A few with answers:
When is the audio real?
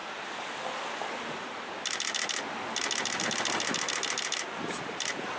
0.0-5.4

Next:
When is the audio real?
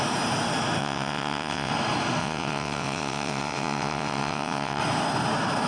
0.0-0.8; 1.7-2.2; 4.8-5.7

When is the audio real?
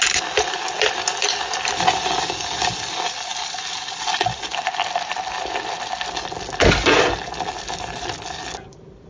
0.0-3.3; 5.4-9.1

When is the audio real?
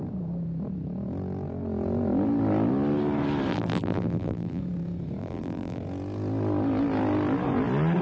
0.0-3.5; 4.6-5.2; 5.8-8.0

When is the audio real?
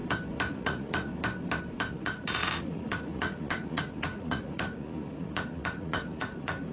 0.0-0.5; 1.1-1.9